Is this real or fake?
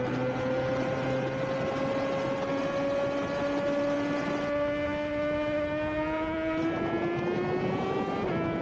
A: real